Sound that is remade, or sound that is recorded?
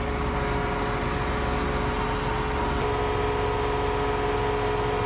recorded